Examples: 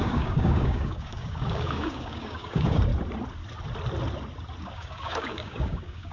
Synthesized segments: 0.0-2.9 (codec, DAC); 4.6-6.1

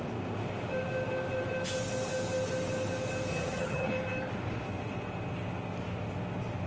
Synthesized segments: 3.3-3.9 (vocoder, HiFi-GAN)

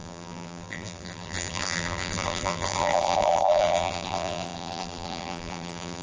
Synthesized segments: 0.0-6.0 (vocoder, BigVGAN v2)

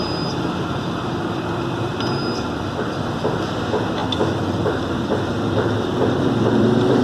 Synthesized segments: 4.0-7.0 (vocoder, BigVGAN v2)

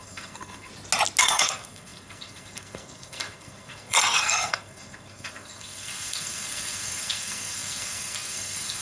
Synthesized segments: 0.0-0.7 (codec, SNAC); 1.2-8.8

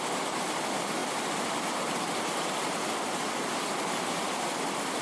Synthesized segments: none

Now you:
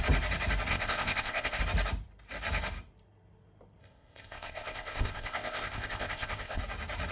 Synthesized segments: 0.7-1.6 (codec, ZipCodec); 3.8-6.6